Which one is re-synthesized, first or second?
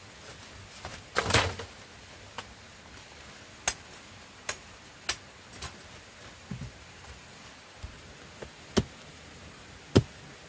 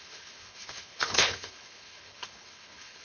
second